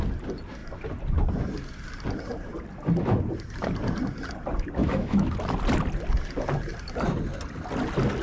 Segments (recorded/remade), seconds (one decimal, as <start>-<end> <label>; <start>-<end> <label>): 0.0-4.8 recorded; 4.8-5.3 remade; 5.3-8.2 recorded